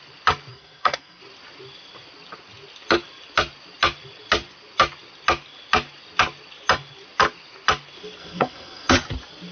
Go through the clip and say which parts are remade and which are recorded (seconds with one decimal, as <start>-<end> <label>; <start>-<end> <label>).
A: 0.0-0.5 recorded; 0.5-1.2 remade; 1.2-8.2 recorded; 8.2-8.9 remade; 8.9-9.5 recorded